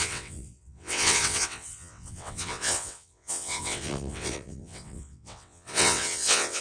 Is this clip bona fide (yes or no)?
no